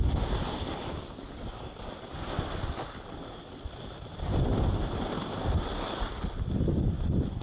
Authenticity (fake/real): real